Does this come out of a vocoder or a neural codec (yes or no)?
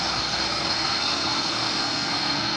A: yes